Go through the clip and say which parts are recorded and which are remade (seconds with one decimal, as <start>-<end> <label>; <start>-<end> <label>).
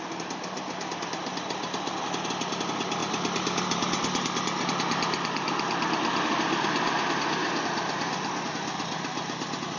0.0-9.8 recorded